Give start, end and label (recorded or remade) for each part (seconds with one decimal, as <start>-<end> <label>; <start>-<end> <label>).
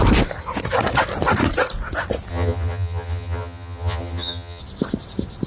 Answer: 0.0-2.3 recorded; 2.3-4.6 remade; 4.6-5.5 recorded